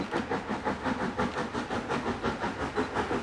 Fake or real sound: real